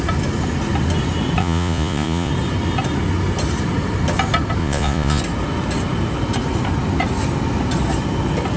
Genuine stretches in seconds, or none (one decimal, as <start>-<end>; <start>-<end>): 0.0-1.4; 2.3-4.6; 5.2-8.6